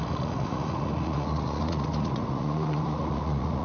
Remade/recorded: remade